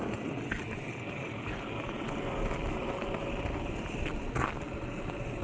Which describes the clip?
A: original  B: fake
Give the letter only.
A